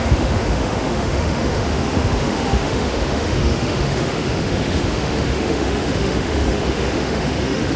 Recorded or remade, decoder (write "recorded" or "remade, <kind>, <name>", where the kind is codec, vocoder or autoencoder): remade, autoencoder, DAC-VAE